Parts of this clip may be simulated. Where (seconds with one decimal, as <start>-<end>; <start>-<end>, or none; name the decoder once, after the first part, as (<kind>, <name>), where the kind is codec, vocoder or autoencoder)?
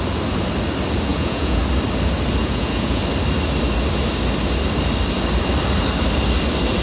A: 1.1-1.6 (vocoder, Vocos); 2.4-3.0